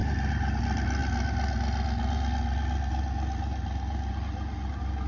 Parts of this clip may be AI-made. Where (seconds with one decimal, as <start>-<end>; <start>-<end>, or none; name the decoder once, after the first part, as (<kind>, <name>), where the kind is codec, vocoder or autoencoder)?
none